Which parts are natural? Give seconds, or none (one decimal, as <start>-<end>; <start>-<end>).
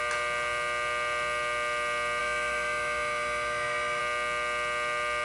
0.0-2.2; 4.0-5.2